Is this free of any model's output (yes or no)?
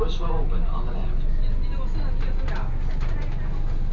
yes